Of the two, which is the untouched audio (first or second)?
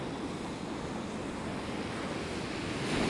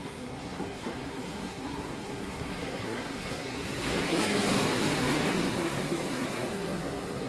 first